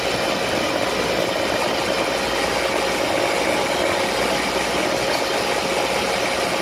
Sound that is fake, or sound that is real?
real